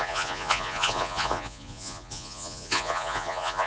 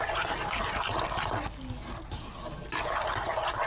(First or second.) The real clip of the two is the second